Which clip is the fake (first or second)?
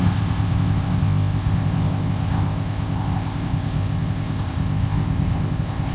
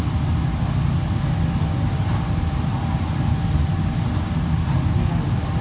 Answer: first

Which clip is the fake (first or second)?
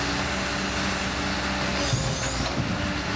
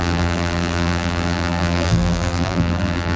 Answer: second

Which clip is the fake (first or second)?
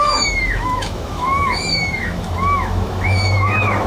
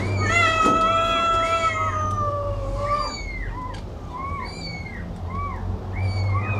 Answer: first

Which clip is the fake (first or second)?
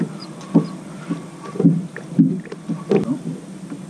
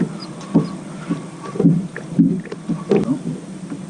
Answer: second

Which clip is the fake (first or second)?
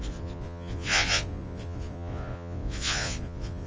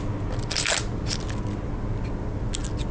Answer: first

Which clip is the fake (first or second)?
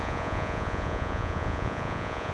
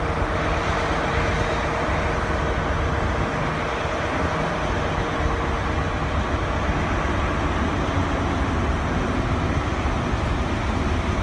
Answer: first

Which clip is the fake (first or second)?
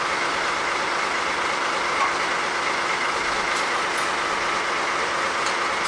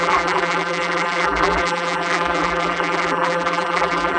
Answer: second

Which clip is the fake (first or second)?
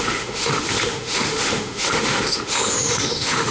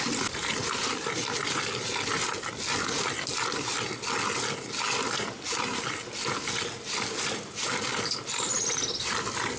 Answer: first